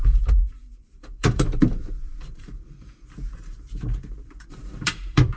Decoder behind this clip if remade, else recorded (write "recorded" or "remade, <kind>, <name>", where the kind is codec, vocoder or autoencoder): remade, vocoder, BigVGAN v2